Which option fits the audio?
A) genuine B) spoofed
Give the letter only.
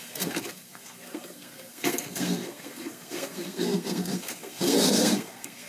B